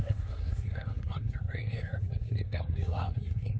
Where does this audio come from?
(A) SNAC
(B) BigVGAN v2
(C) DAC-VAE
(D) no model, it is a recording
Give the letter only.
A